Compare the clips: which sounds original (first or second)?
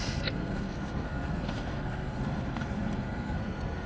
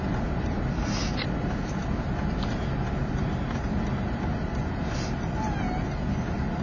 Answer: second